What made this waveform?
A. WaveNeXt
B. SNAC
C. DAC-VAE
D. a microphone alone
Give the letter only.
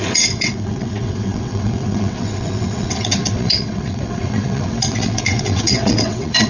A